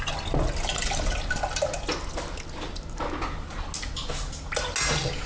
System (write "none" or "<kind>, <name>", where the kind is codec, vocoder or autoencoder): none